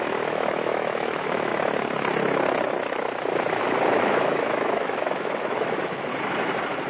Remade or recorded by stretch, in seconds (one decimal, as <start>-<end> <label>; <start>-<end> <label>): 0.0-1.5 remade; 1.5-3.9 recorded; 3.9-6.1 remade; 6.1-6.9 recorded